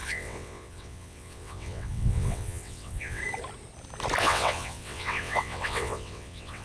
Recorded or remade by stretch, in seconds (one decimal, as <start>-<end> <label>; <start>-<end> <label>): 0.0-3.2 remade; 3.2-4.2 recorded; 4.2-6.6 remade